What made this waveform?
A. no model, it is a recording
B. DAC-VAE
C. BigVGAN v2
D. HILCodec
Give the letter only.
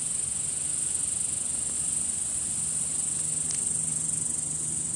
A